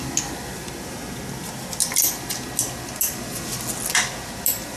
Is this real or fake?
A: real